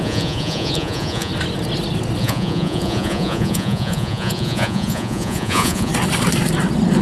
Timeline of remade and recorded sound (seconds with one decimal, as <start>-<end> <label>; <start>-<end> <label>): 0.0-1.3 remade; 1.3-2.2 recorded; 2.2-5.9 remade; 5.9-7.0 recorded